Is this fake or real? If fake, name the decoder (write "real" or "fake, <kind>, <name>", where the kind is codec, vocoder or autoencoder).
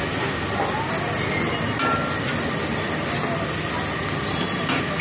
real